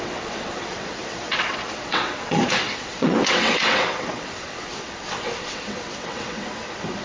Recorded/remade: remade